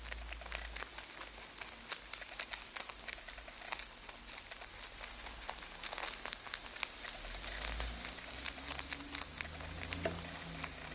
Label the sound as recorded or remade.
recorded